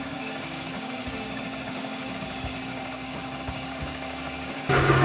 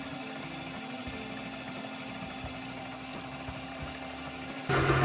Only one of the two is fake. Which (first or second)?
first